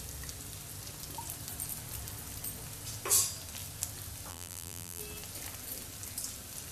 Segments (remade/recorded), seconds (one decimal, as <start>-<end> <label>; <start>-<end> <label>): 0.0-4.3 recorded; 4.3-5.0 remade; 5.0-6.7 recorded